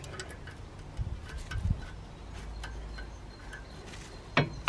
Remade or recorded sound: recorded